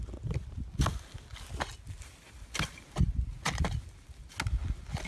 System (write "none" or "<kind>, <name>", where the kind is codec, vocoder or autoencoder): none